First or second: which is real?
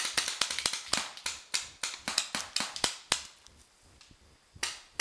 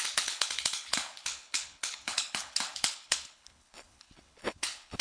first